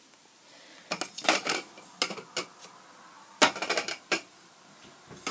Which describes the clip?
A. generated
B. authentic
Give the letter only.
B